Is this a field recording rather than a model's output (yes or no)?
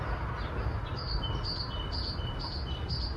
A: yes